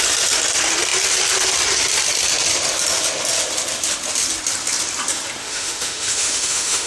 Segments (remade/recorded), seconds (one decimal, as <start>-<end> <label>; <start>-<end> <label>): 0.0-5.4 recorded; 5.4-6.9 remade